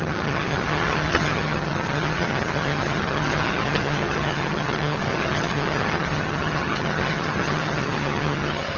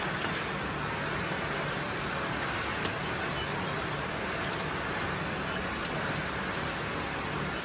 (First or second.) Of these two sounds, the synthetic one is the first